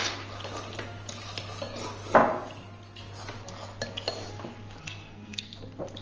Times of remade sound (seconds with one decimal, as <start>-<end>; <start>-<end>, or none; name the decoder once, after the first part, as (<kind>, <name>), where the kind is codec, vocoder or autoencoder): 4.8-5.5 (codec, SNAC)